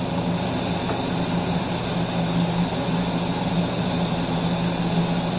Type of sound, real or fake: real